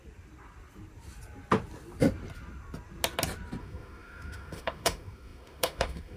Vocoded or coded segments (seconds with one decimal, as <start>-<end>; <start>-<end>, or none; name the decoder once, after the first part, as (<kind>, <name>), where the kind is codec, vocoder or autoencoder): 3.6-6.2 (autoencoder, DAC-VAE)